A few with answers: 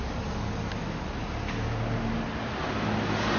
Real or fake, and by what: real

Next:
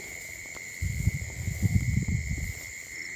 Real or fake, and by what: real